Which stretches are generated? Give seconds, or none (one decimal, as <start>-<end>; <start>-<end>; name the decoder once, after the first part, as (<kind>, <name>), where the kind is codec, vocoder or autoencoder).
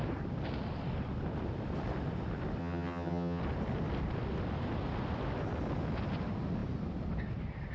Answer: 2.6-3.4 (vocoder, HiFi-GAN)